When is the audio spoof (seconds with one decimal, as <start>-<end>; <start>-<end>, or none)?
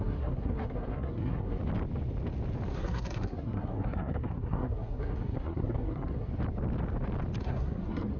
0.0-1.6; 2.7-6.3; 7.4-8.2